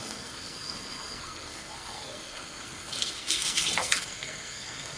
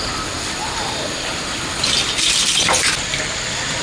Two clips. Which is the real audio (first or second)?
second